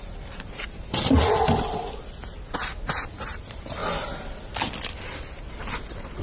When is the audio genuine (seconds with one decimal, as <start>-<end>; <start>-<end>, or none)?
1.2-3.0; 3.8-5.0